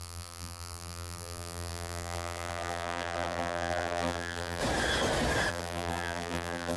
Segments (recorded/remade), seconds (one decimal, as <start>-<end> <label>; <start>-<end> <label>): 0.0-4.6 remade; 4.6-5.5 recorded; 5.5-6.8 remade